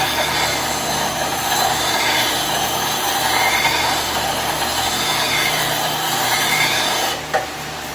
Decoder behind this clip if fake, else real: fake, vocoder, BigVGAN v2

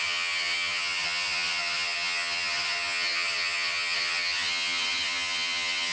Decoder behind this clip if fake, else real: fake, vocoder, HiFi-GAN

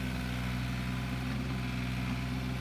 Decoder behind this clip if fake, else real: real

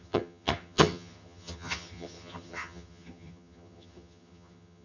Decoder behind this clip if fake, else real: fake, vocoder, HiFi-GAN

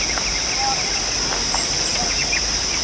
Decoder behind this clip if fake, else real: real